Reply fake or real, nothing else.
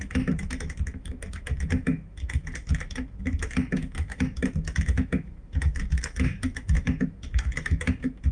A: fake